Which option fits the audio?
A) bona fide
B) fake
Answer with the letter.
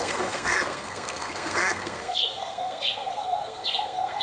B